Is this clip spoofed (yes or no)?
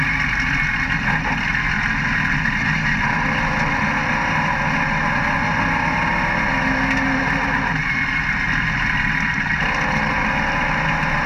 no